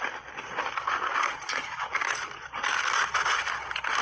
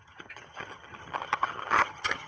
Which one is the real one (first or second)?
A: first